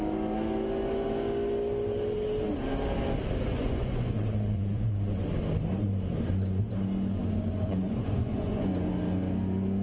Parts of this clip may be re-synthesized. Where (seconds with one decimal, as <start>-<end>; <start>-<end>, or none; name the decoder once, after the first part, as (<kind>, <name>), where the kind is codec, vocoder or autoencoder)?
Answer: 3.5-5.2 (vocoder, Vocos); 7.2-8.7